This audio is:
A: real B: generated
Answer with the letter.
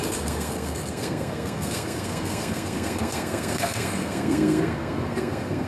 B